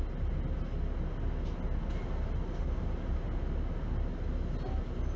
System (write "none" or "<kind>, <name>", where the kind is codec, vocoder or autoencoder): none